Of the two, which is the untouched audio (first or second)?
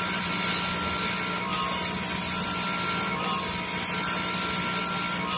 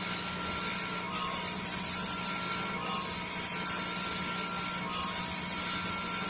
second